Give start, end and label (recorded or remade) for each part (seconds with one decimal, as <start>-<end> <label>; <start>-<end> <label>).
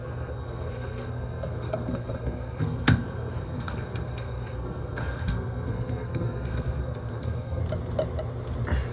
0.0-7.6 remade; 7.6-8.9 recorded